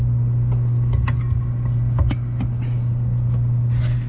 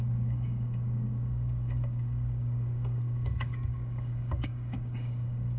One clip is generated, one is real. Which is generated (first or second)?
second